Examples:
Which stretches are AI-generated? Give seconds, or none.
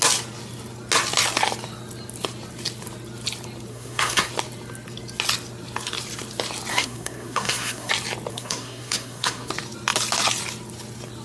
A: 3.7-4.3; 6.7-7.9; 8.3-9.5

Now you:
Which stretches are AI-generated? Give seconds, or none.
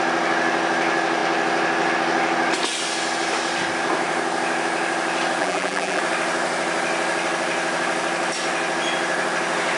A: 5.4-6.0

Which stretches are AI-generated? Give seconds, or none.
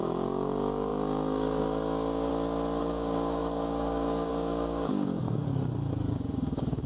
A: 0.0-2.3; 2.8-5.4; 6.1-6.9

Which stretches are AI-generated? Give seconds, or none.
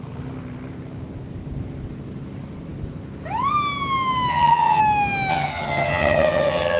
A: 4.3-4.8; 5.3-6.8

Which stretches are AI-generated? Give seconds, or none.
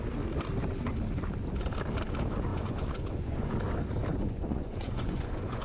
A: 2.5-3.5; 4.1-5.6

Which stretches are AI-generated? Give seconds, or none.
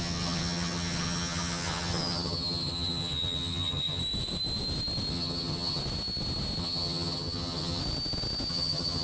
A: 0.0-4.0; 5.1-5.8; 6.6-7.8; 8.5-9.0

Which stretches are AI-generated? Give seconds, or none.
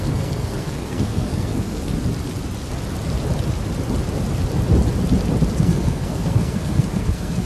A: 0.0-1.9; 5.6-7.5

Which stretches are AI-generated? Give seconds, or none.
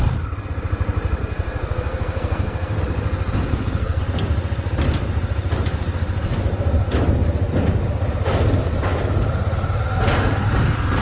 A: 1.2-2.8; 3.5-4.0